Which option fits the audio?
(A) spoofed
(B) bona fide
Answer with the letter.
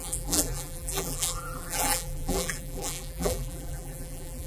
A